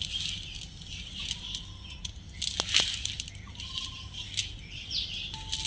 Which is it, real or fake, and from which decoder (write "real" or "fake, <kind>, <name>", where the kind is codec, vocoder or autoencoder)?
real